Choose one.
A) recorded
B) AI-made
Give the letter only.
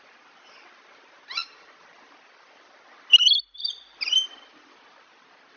A